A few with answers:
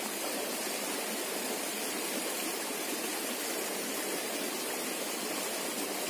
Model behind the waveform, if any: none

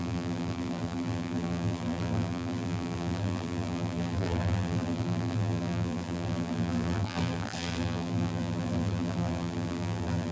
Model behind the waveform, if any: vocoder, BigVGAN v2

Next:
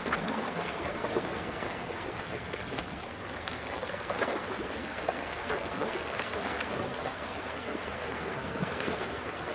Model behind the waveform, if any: codec, SNAC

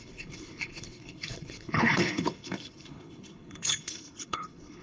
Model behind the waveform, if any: codec, HILCodec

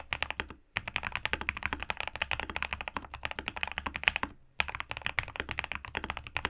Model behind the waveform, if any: none